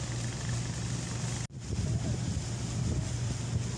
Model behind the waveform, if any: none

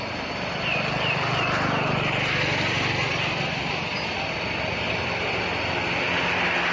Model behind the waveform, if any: none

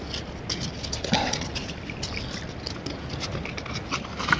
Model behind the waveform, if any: none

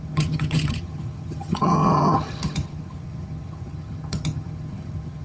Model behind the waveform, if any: vocoder, HiFi-GAN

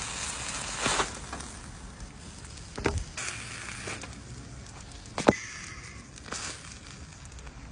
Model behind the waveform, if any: none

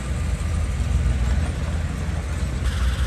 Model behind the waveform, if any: none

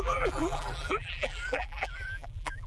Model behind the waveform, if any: vocoder, BigVGAN v2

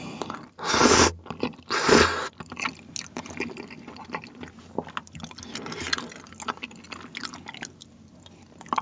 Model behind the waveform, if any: none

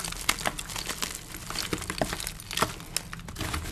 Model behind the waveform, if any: none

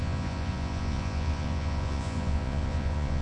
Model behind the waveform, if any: vocoder, Vocos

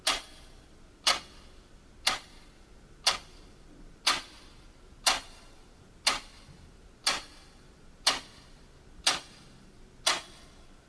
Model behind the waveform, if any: none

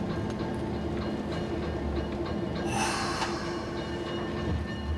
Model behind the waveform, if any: none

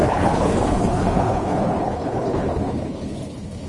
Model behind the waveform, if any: codec, HILCodec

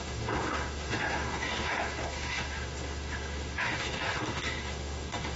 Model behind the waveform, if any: autoencoder, DAC-VAE